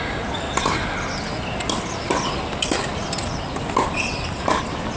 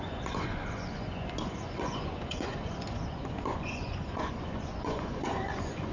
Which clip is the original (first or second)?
first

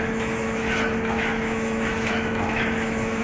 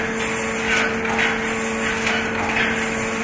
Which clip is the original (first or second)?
second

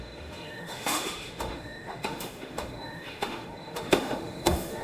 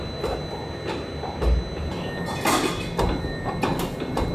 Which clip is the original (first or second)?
second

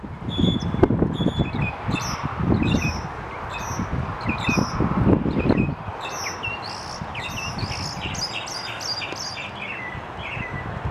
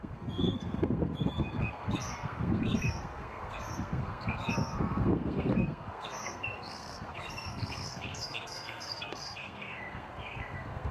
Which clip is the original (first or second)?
first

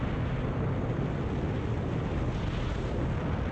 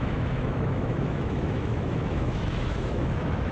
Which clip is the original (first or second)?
first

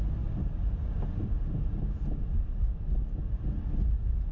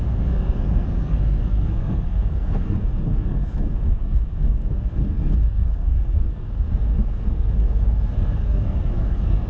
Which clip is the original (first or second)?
first